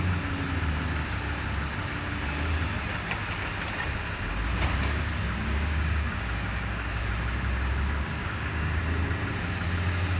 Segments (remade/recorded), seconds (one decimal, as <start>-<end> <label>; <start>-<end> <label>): 0.0-4.5 recorded; 4.5-7.1 remade; 7.1-8.2 recorded; 8.2-8.8 remade; 8.8-10.2 recorded